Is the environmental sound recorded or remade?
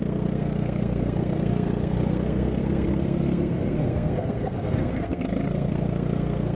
remade